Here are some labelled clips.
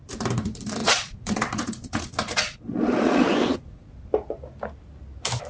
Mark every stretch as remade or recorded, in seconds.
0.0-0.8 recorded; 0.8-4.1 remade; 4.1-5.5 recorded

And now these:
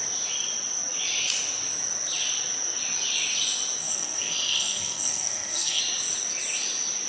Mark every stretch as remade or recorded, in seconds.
0.0-3.8 recorded; 3.8-5.8 remade; 5.8-7.1 recorded